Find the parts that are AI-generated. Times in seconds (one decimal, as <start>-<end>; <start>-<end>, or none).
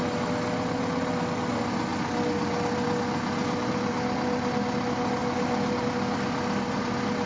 1.9-3.9; 5.2-6.8